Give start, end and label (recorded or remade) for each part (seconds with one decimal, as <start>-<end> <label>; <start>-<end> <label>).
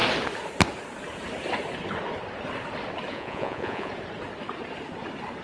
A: 0.0-3.1 recorded; 3.1-3.9 remade; 3.9-5.4 recorded